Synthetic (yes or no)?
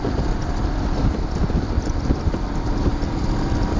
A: no